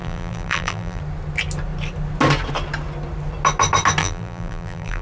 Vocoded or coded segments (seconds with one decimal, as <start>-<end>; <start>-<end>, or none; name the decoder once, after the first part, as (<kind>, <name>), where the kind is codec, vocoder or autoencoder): 0.0-1.0 (vocoder, BigVGAN v2); 4.0-5.0